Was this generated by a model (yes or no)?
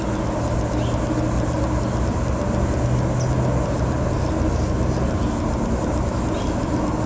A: no